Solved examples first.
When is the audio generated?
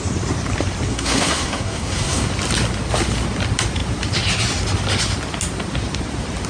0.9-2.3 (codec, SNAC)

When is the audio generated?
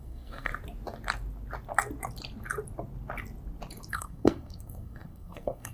0.0-0.5 (codec, SNAC); 3.9-5.7